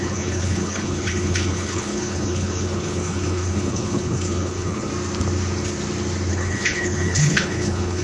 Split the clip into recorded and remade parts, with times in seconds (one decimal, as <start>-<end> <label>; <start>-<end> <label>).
0.0-4.9 remade; 4.9-6.3 recorded; 6.3-8.0 remade